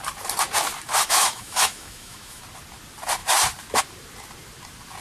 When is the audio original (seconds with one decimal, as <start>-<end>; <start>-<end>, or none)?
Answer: 0.0-1.0; 2.4-5.0